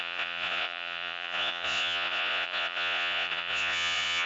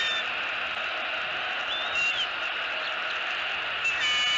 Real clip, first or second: second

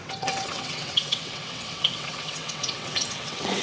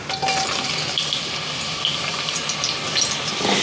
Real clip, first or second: second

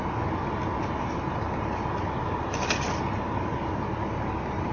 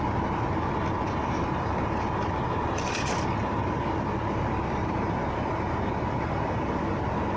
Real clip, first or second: first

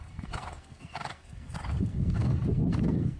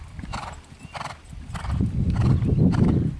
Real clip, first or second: second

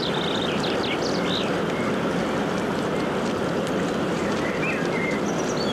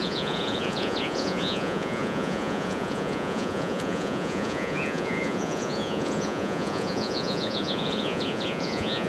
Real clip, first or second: first